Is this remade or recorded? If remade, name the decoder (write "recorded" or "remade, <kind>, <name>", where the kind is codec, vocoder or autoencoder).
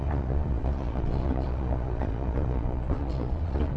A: remade, vocoder, Vocos